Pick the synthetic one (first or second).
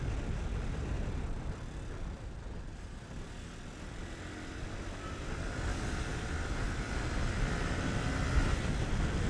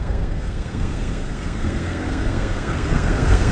second